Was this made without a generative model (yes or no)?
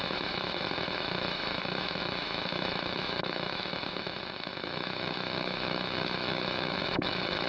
no